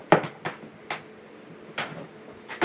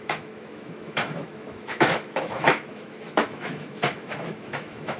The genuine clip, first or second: first